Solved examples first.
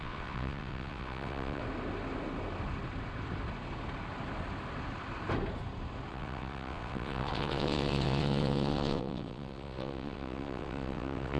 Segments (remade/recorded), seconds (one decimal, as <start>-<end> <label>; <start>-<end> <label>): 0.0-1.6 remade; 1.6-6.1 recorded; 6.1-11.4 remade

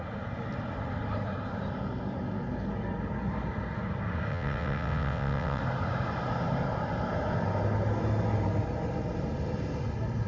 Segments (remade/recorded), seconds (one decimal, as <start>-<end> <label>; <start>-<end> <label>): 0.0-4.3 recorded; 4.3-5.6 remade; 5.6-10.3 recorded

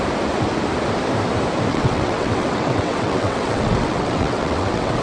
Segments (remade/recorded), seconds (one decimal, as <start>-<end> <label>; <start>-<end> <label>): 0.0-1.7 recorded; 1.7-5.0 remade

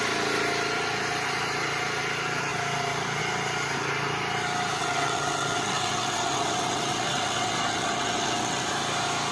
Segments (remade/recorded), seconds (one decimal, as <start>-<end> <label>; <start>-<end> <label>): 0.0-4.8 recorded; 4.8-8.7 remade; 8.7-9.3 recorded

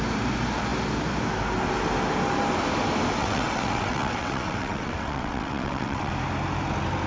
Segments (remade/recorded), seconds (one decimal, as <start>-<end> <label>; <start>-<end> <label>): 0.0-3.2 recorded; 3.2-6.1 remade; 6.1-7.1 recorded

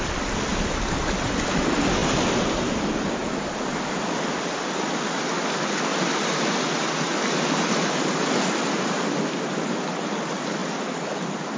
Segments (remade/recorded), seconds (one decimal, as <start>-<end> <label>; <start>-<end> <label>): 0.0-11.6 recorded